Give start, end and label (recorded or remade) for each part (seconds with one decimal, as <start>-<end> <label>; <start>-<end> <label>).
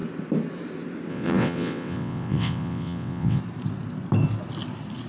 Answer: 0.0-1.1 recorded; 1.1-3.4 remade; 3.4-5.1 recorded